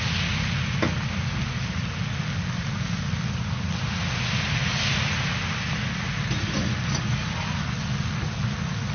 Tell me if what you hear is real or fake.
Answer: real